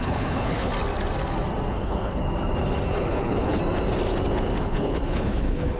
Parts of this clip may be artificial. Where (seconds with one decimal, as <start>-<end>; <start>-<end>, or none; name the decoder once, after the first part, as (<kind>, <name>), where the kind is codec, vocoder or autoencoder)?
0.0-0.7 (codec, HILCodec); 1.7-2.2; 2.9-3.6; 4.6-5.8